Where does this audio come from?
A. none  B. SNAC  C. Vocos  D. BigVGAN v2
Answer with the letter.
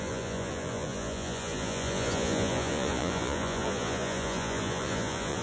C